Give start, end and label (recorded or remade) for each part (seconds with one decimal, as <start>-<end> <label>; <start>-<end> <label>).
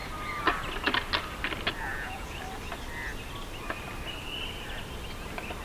0.0-1.9 recorded; 1.9-2.4 remade; 2.4-5.6 recorded